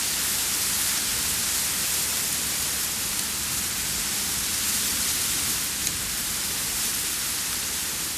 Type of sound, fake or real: real